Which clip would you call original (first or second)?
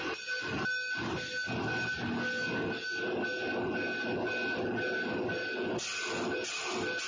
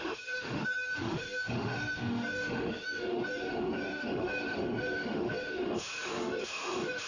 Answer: first